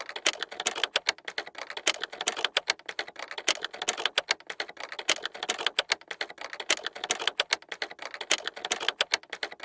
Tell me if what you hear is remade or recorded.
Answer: recorded